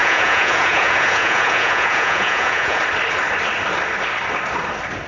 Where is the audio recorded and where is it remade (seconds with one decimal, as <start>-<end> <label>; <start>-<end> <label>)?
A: 0.0-2.8 remade; 2.8-5.1 recorded